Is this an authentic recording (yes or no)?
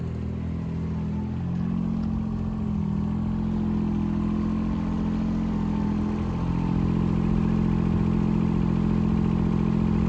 yes